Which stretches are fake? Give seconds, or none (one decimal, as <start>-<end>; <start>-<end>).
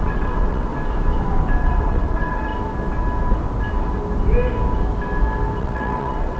0.0-0.7; 1.6-2.5; 5.6-6.4